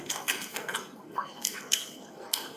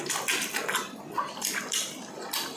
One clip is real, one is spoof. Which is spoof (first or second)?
first